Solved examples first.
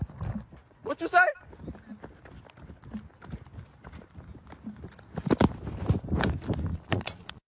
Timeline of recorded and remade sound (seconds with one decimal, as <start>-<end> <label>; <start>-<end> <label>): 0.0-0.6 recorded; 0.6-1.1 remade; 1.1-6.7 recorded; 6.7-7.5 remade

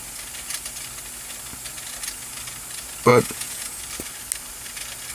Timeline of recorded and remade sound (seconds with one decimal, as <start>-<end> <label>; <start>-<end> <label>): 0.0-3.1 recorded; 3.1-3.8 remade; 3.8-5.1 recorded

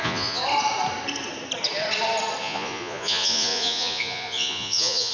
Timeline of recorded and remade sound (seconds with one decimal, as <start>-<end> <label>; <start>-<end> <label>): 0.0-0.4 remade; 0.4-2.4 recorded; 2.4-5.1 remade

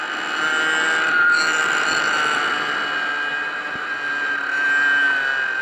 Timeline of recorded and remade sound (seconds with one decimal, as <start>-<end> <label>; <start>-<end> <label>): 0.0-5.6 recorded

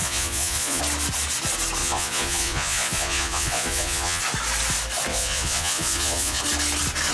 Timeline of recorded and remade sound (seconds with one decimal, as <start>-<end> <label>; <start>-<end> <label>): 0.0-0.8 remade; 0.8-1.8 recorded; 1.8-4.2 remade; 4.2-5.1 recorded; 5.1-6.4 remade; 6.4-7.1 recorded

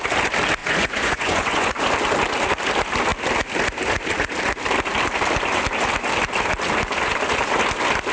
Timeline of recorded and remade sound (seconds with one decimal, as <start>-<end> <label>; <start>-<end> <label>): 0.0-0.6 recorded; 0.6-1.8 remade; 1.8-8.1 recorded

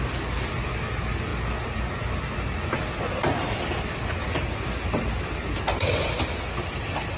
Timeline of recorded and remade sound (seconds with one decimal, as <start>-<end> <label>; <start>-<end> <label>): 0.0-7.2 recorded

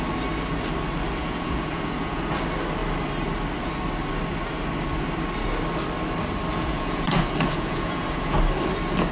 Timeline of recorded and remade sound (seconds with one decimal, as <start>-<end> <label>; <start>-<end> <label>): 0.0-1.2 recorded; 1.2-2.3 remade; 2.3-6.5 recorded; 6.5-8.4 remade; 8.4-9.1 recorded